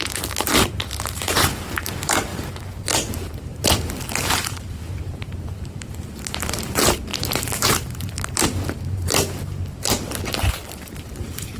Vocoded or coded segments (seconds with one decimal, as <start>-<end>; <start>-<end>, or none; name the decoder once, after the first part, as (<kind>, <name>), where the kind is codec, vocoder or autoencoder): 0.0-11.6 (vocoder, BigVGAN v2)